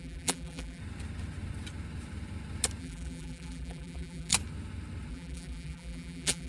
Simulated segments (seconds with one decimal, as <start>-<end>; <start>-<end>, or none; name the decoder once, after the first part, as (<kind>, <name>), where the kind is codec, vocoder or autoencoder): 0.0-0.8 (vocoder, BigVGAN v2); 2.8-4.3; 5.1-6.5